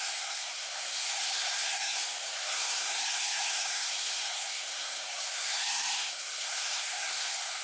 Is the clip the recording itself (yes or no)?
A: no